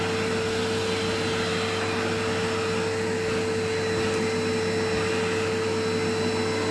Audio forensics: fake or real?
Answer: real